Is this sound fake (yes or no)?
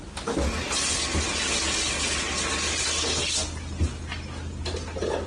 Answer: no